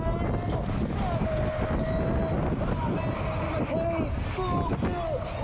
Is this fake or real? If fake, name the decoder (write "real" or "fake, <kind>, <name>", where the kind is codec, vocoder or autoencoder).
real